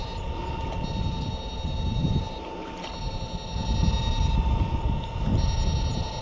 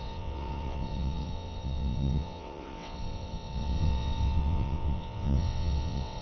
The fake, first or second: second